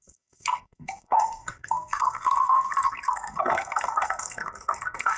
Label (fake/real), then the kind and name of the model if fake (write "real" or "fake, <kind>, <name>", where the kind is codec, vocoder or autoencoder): fake, codec, SNAC